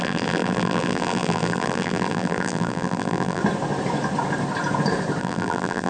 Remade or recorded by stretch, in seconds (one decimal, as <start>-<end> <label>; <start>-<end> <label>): 0.0-3.4 remade; 3.4-5.2 recorded; 5.2-5.9 remade